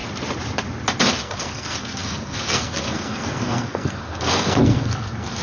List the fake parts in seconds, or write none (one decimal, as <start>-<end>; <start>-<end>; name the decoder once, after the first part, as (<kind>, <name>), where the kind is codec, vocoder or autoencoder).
1.2-5.4 (codec, SNAC)